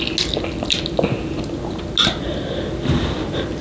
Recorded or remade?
recorded